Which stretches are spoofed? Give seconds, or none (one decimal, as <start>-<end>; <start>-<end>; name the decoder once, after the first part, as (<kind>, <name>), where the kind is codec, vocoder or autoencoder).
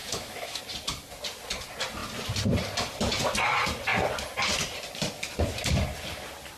0.0-0.6 (autoencoder, DAC-VAE)